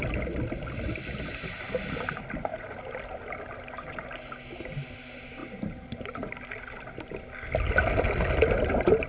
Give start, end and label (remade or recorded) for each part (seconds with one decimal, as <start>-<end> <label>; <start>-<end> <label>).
0.0-9.1 recorded